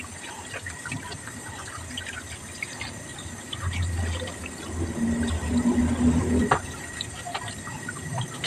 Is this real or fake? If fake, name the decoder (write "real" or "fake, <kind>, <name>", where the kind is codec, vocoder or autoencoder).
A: real